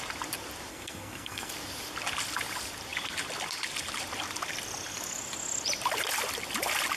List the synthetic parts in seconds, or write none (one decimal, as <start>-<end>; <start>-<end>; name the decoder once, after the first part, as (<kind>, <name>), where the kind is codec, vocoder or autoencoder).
0.7-1.5 (codec, SNAC)